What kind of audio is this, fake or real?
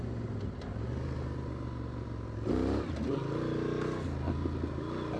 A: real